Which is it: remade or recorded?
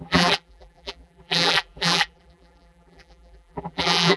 remade